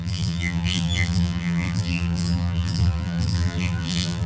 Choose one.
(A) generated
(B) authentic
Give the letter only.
A